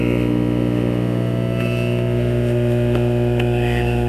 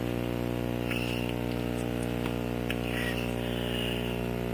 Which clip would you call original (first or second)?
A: second